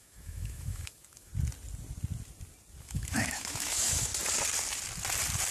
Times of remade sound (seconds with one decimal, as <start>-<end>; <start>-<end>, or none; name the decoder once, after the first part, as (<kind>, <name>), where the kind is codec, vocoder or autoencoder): 0.0-1.3 (autoencoder, DAC-VAE); 2.8-4.1